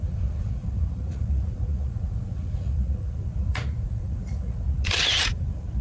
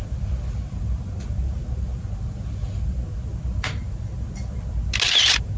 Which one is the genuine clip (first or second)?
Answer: second